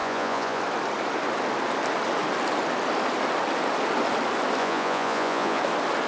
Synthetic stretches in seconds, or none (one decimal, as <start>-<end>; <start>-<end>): 0.0-0.6; 4.6-5.6